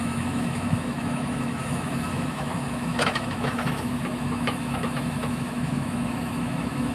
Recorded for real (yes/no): no